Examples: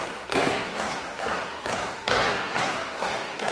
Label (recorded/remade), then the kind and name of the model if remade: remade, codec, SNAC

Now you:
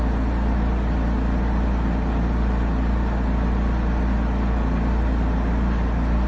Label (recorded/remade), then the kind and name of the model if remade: recorded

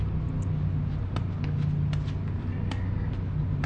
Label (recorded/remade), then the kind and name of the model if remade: recorded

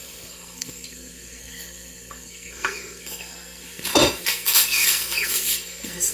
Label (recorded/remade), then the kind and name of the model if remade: remade, codec, SNAC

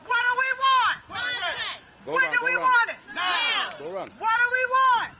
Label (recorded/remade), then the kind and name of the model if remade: recorded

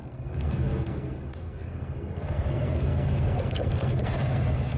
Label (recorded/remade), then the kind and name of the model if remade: remade, codec, SNAC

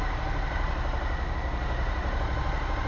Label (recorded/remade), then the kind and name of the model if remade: recorded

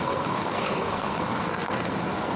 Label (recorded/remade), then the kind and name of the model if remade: remade, codec, SNAC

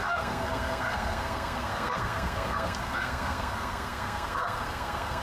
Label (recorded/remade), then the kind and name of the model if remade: remade, codec, SNAC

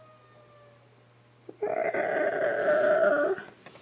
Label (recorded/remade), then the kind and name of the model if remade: recorded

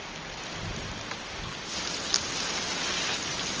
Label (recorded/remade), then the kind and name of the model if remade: recorded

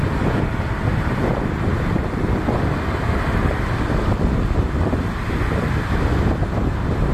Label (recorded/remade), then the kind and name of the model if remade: recorded